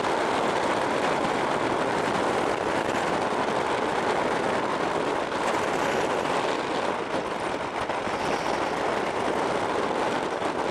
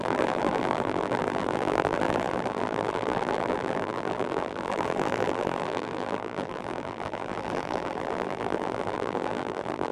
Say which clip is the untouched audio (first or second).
first